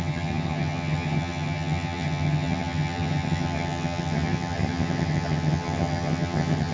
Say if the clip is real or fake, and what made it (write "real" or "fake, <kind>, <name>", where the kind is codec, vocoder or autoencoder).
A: fake, vocoder, HiFi-GAN